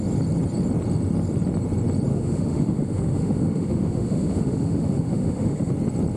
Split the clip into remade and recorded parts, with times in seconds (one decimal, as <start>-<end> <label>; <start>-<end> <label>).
0.0-2.1 recorded; 2.1-5.7 remade; 5.7-6.2 recorded